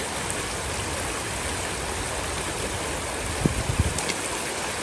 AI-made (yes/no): no